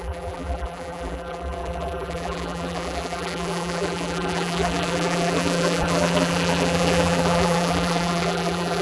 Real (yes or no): no